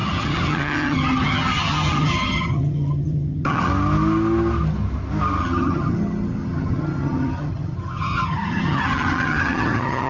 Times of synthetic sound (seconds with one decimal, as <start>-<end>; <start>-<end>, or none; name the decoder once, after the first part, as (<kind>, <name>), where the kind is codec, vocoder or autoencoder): 0.0-3.7 (vocoder, HiFi-GAN); 5.4-10.1